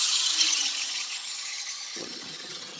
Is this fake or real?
fake